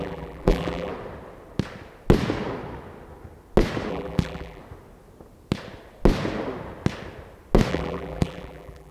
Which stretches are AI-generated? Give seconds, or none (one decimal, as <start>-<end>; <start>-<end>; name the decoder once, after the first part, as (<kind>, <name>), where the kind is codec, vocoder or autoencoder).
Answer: 0.0-0.9 (vocoder, BigVGAN v2); 3.9-4.6; 7.7-8.9